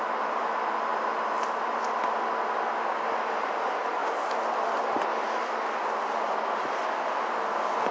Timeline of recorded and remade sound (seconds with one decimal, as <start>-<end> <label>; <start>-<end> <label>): 0.0-0.9 remade; 0.9-2.9 recorded; 2.9-7.9 remade